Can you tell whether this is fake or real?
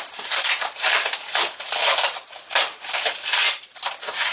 real